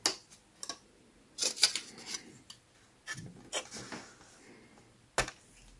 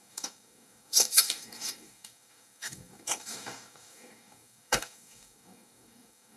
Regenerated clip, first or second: second